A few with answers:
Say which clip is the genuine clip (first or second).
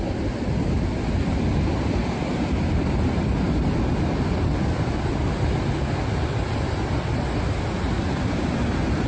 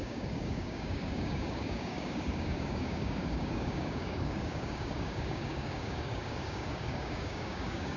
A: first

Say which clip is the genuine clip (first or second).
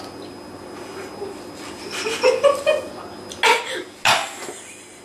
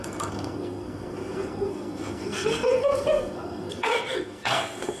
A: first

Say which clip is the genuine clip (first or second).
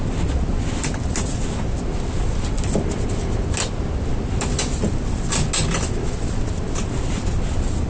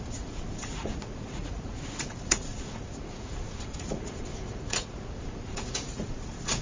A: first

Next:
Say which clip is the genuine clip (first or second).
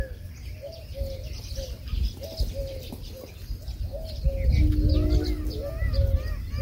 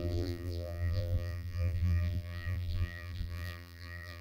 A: first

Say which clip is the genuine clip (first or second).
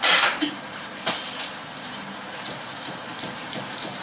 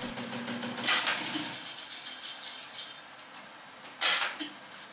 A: second